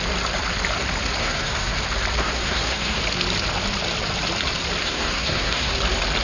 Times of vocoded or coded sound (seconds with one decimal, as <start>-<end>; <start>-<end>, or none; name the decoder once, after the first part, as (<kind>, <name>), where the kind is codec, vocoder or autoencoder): 1.2-1.8 (codec, SNAC); 2.2-3.0; 4.8-5.7

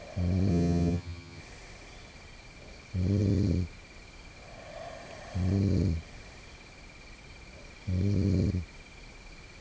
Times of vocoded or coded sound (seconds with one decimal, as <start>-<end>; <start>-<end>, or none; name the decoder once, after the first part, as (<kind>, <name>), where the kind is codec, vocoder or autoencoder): 0.5-1.4 (vocoder, HiFi-GAN)

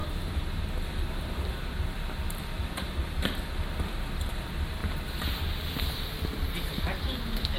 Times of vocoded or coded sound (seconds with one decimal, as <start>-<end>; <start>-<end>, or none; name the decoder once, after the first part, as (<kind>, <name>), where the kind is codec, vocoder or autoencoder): none